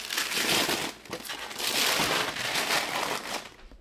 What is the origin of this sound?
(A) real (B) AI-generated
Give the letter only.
A